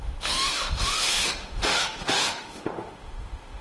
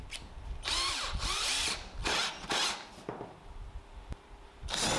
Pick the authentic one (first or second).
second